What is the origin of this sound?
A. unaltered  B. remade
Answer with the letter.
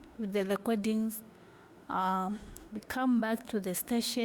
B